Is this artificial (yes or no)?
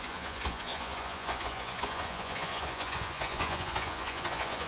yes